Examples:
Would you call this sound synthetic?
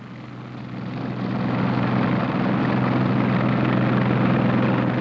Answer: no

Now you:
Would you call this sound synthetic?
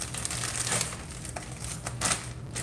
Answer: no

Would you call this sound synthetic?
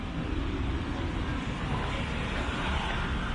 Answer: no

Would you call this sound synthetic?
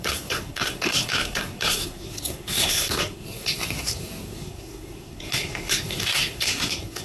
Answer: yes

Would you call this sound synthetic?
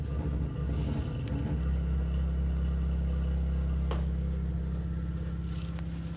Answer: no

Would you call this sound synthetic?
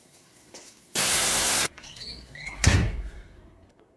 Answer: yes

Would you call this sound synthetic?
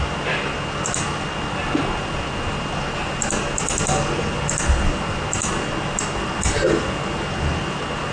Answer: no